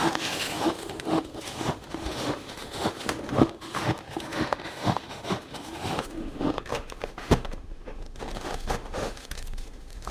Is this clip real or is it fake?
fake